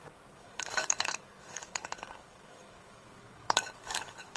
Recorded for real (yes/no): no